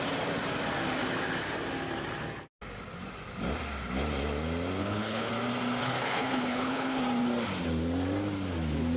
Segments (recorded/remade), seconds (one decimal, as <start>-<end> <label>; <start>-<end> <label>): 0.0-4.8 recorded; 4.8-5.3 remade; 5.3-5.8 recorded; 5.8-7.0 remade; 7.0-9.0 recorded